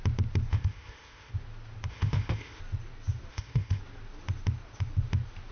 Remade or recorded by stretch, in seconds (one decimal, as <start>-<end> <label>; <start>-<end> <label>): 0.0-0.5 recorded; 0.5-1.3 remade; 1.3-1.9 recorded; 1.9-2.6 remade; 2.6-3.3 recorded; 3.3-3.8 remade; 3.8-5.5 recorded